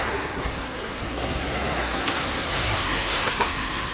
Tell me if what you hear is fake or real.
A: fake